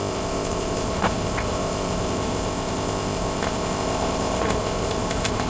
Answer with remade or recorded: remade